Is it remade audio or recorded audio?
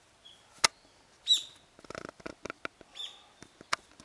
recorded